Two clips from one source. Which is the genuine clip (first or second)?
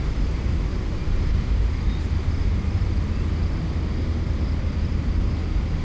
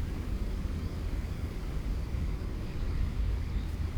first